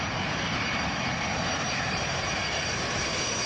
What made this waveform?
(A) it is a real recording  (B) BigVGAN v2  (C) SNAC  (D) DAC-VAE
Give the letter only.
B